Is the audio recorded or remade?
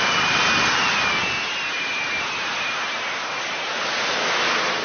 recorded